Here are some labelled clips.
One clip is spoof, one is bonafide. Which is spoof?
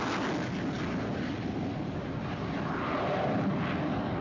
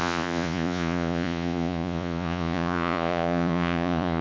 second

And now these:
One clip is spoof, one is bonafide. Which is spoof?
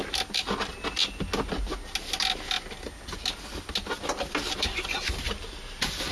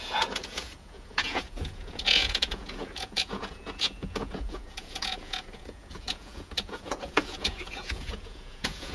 second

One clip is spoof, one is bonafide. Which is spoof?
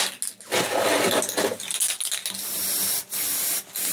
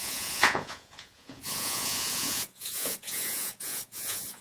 second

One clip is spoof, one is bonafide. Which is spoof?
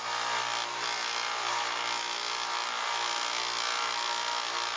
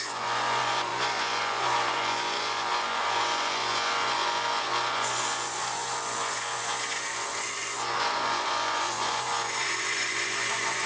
second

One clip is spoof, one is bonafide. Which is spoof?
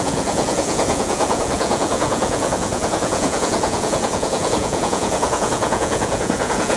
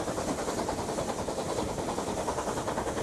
first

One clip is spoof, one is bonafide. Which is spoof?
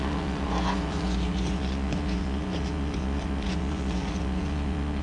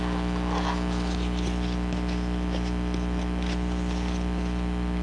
first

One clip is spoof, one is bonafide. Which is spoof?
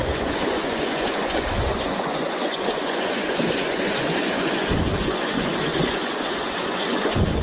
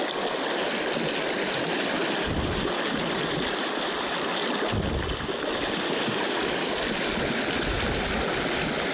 first